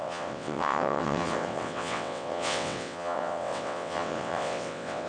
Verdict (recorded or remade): remade